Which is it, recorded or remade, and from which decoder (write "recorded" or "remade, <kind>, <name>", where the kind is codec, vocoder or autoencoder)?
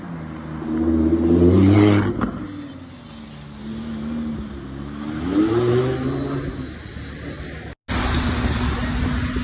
recorded